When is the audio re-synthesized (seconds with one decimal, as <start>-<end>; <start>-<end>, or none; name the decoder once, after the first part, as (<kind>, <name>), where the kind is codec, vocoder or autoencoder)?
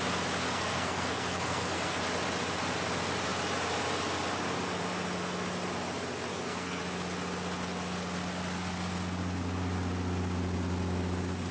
0.4-2.0 (codec, SNAC); 6.3-6.8